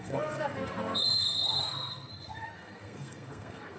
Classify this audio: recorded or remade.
remade